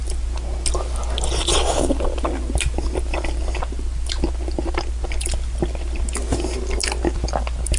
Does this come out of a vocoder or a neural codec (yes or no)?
no